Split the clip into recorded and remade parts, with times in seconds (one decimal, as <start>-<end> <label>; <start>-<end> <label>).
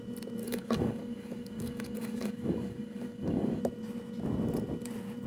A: 0.0-0.4 recorded; 0.4-3.6 remade; 3.6-5.3 recorded